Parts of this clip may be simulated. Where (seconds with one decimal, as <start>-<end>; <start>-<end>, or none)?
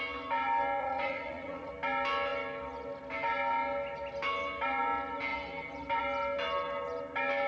0.8-1.7